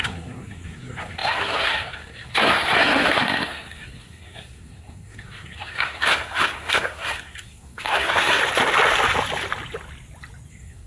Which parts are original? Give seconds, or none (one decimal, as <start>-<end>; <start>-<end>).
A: 8.4-10.5